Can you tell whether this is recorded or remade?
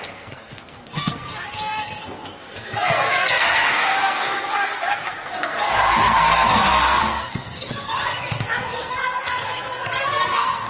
remade